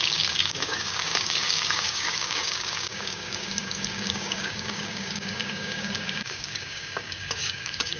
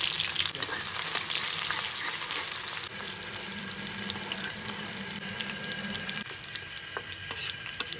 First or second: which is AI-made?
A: first